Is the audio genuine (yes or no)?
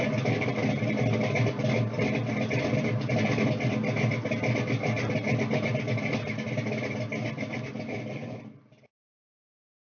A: yes